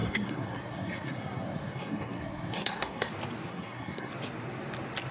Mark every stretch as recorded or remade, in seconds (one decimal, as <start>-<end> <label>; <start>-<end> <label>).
0.0-3.1 remade; 3.1-3.5 recorded; 3.5-4.1 remade; 4.1-5.1 recorded